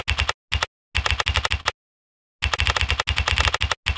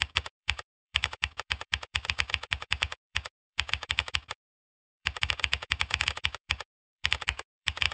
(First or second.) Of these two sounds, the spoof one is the second